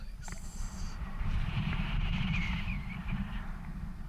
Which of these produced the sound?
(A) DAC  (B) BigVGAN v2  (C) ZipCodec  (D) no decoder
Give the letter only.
B